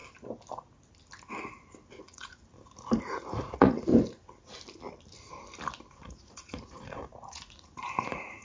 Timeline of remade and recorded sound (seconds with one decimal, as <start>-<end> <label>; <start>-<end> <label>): 0.0-1.9 recorded; 1.9-2.4 remade; 2.4-3.0 recorded; 3.0-3.9 remade; 3.9-5.9 recorded; 5.9-8.4 remade